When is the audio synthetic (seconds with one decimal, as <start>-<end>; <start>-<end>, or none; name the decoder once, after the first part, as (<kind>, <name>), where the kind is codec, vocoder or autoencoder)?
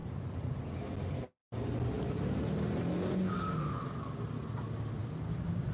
0.0-0.5 (vocoder, BigVGAN v2)